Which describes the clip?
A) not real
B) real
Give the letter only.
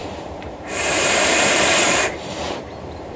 A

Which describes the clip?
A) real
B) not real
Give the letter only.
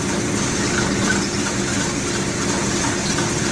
A